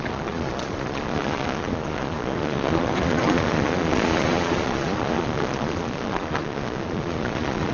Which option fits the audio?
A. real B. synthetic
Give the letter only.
B